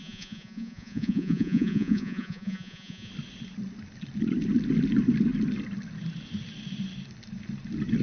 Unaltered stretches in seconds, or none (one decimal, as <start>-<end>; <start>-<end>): 3.1-8.0